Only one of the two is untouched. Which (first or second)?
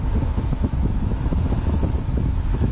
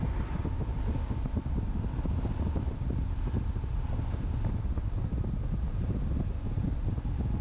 second